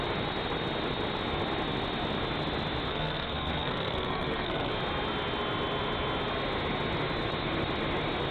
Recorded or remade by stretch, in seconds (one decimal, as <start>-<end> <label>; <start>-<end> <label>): 0.0-2.9 recorded; 2.9-4.7 remade; 4.7-8.3 recorded